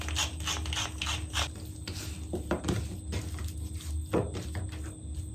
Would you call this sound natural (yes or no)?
yes